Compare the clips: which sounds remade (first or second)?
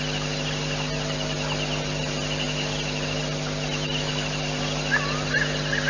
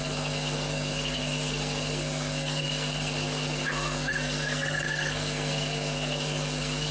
second